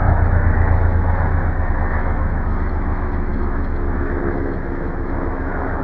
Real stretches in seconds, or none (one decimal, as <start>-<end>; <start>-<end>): none